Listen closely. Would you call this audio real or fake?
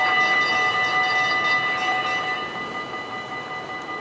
real